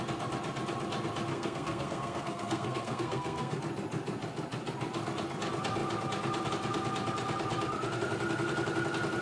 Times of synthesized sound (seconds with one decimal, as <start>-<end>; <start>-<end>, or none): 1.3-3.6